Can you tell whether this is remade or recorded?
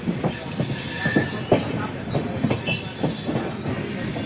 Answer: recorded